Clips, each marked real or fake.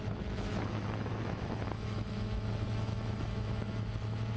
fake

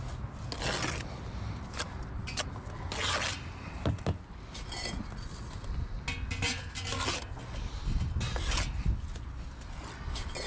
real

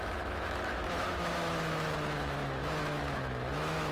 fake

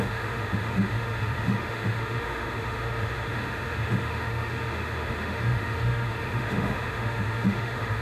fake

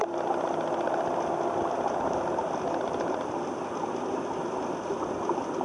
real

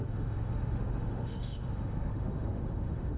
fake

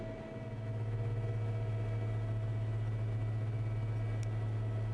real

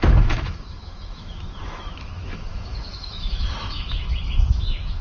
fake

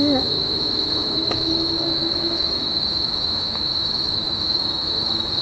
fake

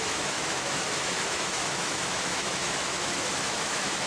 fake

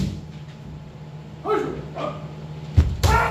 real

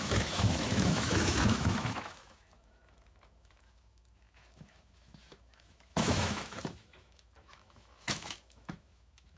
fake